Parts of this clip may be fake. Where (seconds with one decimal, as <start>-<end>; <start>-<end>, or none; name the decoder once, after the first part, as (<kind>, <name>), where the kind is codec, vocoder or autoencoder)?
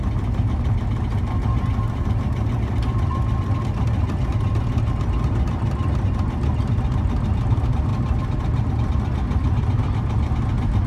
none